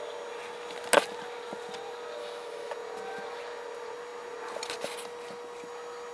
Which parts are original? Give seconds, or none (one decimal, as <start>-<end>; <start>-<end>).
0.0-2.2; 2.7-6.1